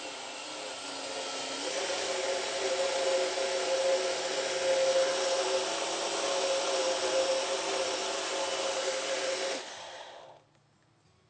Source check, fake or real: real